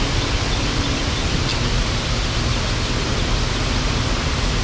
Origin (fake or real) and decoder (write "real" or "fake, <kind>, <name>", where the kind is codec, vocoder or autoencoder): real